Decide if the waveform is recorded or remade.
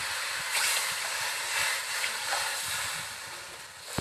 recorded